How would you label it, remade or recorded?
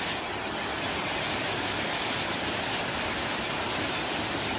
recorded